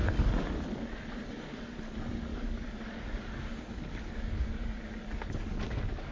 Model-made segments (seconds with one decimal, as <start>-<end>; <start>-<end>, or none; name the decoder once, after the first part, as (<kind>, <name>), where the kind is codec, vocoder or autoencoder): 0.0-0.6 (codec, DAC); 2.3-6.1